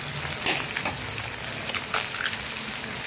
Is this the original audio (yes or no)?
yes